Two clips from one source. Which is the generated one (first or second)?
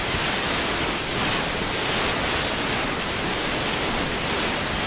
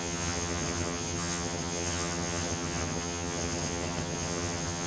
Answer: second